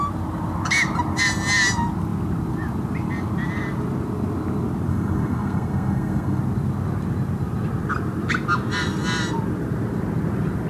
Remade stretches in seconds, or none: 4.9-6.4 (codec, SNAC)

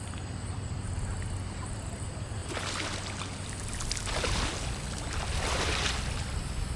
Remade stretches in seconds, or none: none

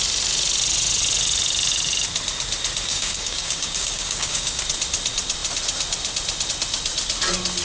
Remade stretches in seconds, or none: 2.9-4.6 (codec, DAC)

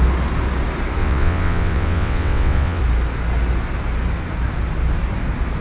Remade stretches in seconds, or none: 1.0-2.8 (vocoder, WaveNeXt)

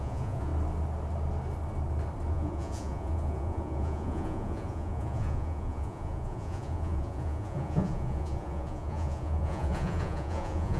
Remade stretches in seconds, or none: 0.0-0.5 (vocoder, Vocos); 2.3-10.8

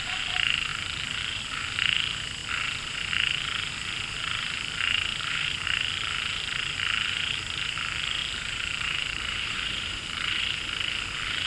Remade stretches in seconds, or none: 0.7-1.4 (vocoder, BigVGAN v2); 5.1-5.8; 8.2-10.0

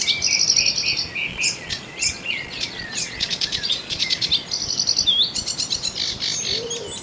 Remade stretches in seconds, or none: 1.3-4.3 (vocoder, Vocos)

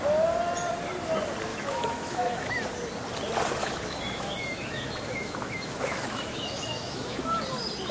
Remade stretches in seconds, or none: 1.5-2.7 (autoencoder, DAC-VAE); 3.6-7.4